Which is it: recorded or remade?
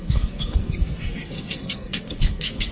remade